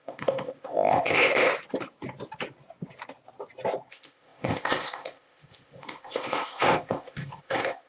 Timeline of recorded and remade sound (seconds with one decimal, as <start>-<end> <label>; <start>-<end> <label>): 0.0-1.5 remade; 1.5-3.9 recorded; 3.9-7.9 remade